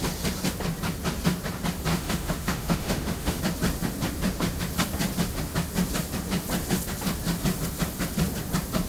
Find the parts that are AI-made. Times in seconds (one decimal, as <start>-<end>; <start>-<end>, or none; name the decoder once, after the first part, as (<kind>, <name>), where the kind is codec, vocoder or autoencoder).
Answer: 1.9-3.4 (autoencoder, DAC-VAE)